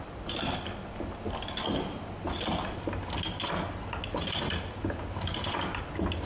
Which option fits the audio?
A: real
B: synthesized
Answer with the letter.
A